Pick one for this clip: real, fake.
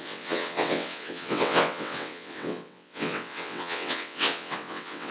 fake